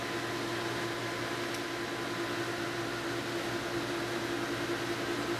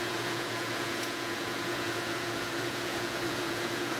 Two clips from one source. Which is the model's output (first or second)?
second